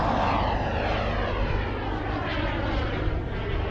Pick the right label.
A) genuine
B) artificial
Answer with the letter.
A